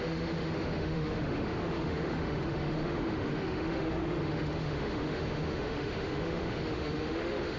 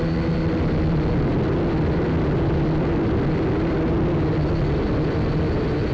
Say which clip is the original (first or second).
second